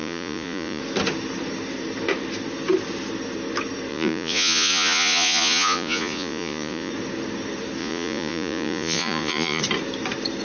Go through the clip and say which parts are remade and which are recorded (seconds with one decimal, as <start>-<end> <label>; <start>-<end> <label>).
0.0-0.8 remade; 0.8-3.9 recorded; 3.9-6.9 remade; 6.9-7.8 recorded; 7.8-9.6 remade; 9.6-10.4 recorded

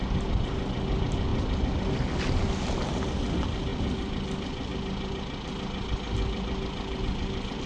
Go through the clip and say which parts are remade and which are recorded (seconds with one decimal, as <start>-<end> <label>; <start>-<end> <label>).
0.0-7.7 recorded

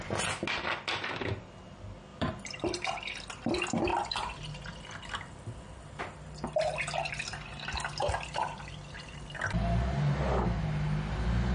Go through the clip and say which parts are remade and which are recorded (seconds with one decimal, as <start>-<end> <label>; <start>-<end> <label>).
0.0-2.1 recorded; 2.1-3.5 remade; 3.5-3.9 recorded; 3.9-7.1 remade; 7.1-8.0 recorded; 8.0-8.8 remade; 8.8-11.5 recorded